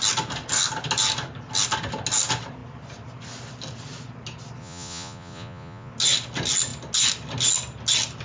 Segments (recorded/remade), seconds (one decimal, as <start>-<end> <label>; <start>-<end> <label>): 0.0-4.6 recorded; 4.6-5.9 remade; 5.9-8.2 recorded